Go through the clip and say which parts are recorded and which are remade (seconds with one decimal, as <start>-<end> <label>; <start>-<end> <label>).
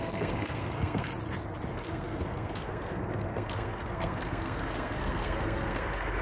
0.0-1.1 remade; 1.1-1.7 recorded; 1.7-6.2 remade